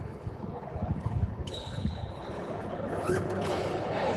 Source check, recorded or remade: remade